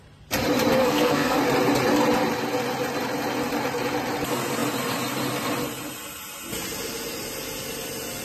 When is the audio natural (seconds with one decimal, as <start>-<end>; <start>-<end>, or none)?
0.0-0.8; 1.4-8.2

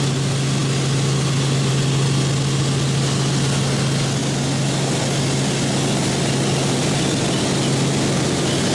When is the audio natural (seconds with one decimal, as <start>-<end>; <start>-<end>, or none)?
0.0-8.7

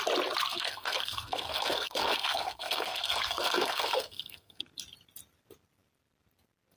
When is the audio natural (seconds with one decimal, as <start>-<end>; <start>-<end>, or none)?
0.0-0.5; 4.6-6.8

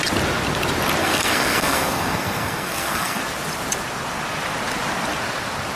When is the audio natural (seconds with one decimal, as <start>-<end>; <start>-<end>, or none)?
0.0-1.0; 3.2-5.8

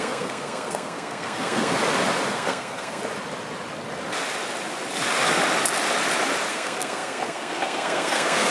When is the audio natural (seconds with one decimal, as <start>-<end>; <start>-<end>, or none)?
1.8-2.3; 3.0-6.5

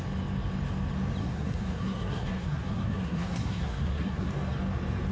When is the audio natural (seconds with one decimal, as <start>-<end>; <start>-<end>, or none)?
0.0-1.2; 4.3-5.1